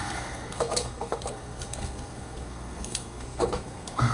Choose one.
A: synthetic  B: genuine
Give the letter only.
A